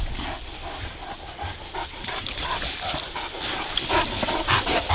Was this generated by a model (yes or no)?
no